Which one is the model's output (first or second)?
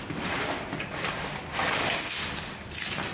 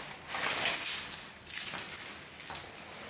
first